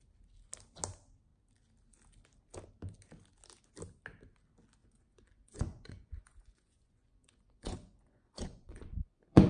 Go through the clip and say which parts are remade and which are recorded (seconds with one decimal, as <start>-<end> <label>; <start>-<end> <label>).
0.0-4.8 recorded; 4.8-9.5 remade